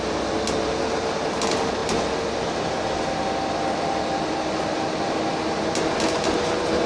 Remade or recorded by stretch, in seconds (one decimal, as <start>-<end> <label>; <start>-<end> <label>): 0.0-6.9 recorded